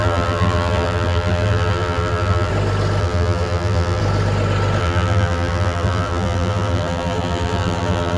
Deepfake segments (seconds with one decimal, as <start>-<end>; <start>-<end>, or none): 0.0-2.5; 3.0-4.0; 4.8-8.2